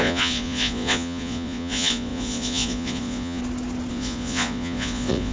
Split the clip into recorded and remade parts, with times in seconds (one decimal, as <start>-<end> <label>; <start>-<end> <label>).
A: 0.0-3.4 remade; 3.4-3.9 recorded; 3.9-5.3 remade